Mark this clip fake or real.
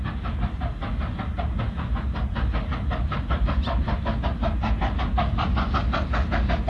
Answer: real